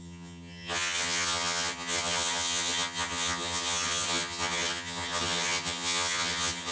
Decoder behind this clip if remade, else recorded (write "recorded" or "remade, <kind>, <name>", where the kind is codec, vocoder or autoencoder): remade, vocoder, HiFi-GAN